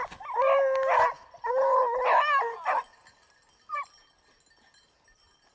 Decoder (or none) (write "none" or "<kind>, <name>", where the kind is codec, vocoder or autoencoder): none